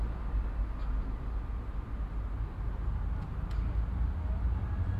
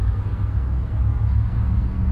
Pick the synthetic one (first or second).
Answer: second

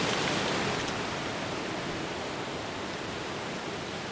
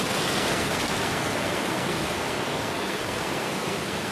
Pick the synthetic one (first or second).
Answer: second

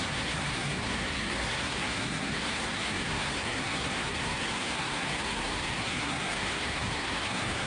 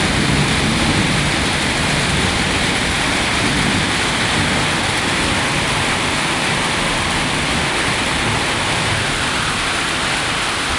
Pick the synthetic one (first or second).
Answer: first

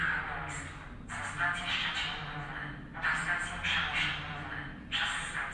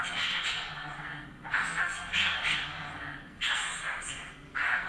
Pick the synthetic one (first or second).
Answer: second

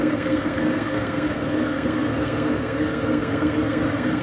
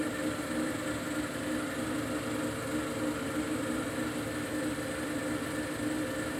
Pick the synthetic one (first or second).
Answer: first